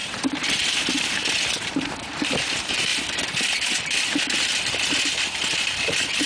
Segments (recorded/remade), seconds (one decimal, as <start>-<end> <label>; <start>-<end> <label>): 0.0-6.3 remade